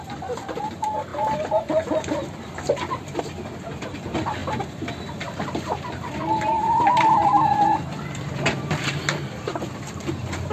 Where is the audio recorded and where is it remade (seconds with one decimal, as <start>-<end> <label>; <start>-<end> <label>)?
0.0-10.5 recorded